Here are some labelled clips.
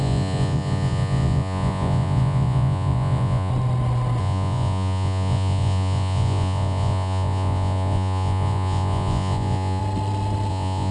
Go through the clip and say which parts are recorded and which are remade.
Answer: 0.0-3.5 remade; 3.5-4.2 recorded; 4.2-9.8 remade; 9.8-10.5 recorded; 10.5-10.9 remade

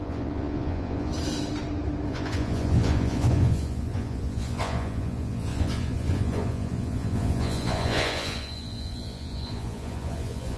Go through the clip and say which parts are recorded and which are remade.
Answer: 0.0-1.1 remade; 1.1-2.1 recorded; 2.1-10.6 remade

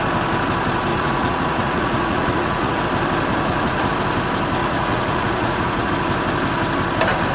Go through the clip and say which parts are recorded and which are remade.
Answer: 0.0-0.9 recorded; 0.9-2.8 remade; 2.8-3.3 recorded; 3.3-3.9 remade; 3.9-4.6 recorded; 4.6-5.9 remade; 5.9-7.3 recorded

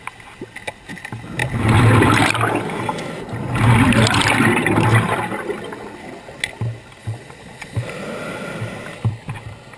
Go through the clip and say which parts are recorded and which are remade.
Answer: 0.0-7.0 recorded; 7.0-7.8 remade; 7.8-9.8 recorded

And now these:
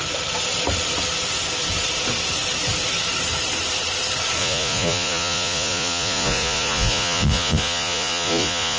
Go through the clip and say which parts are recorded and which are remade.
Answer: 0.0-4.4 recorded; 4.4-8.8 remade

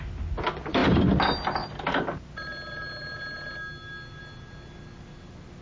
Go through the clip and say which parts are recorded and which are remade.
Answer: 0.0-5.6 recorded

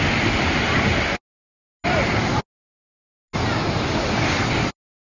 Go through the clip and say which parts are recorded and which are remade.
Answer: 0.0-5.0 recorded